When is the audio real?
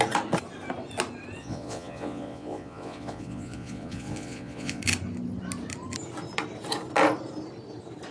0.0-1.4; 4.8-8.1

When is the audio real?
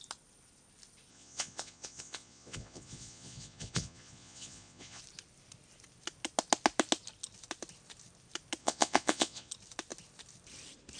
0.0-1.1; 5.0-8.6; 9.5-11.0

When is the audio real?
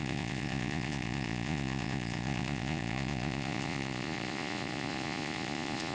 none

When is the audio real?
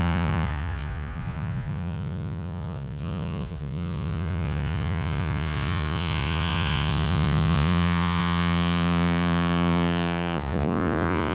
none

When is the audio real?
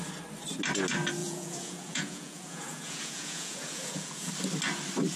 0.0-1.2; 4.3-5.2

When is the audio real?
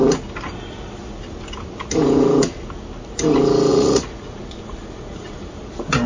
0.0-3.7; 5.5-6.1